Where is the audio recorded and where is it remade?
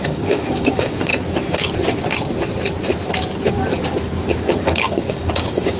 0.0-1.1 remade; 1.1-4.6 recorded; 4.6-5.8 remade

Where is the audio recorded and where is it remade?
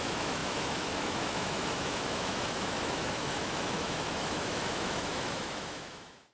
0.0-6.3 remade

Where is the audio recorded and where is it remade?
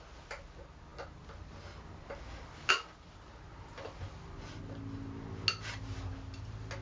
0.0-6.8 recorded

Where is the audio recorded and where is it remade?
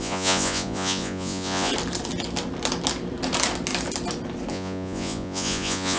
0.0-1.7 remade; 1.7-4.5 recorded; 4.5-6.0 remade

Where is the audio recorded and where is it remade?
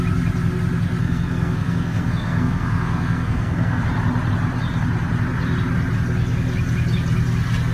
0.0-1.0 recorded; 1.0-3.8 remade; 3.8-7.7 recorded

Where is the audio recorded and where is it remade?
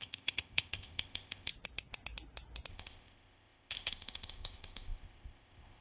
0.0-1.5 remade; 1.5-2.7 recorded; 2.7-5.8 remade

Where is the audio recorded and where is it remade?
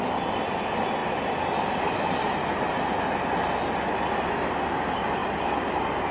0.0-6.1 recorded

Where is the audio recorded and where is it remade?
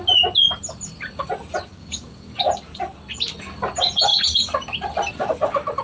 0.0-1.7 recorded; 1.7-2.4 remade; 2.4-5.8 recorded